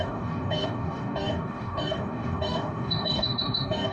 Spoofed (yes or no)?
yes